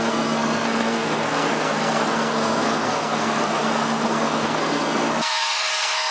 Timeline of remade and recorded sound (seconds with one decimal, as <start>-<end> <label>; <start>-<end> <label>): 0.0-6.1 remade